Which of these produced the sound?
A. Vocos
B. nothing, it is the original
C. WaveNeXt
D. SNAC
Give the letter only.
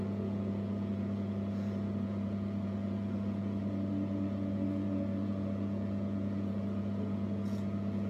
A